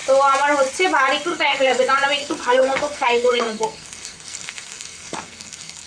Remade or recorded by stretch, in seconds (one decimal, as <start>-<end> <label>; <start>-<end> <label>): 0.0-1.3 recorded; 1.3-1.8 remade; 1.8-2.2 recorded; 2.2-5.9 remade